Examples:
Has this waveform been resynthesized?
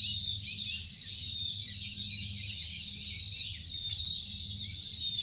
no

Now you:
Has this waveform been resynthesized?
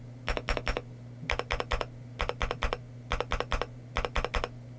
no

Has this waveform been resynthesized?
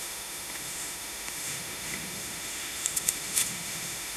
yes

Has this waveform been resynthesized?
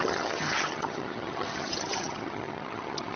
yes